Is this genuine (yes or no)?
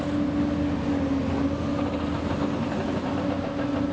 yes